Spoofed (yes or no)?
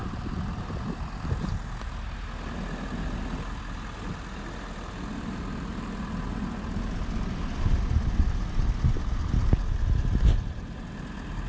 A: no